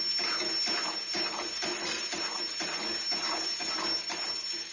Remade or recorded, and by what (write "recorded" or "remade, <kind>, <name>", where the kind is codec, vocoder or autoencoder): recorded